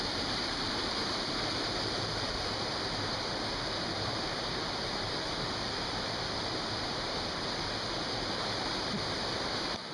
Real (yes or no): no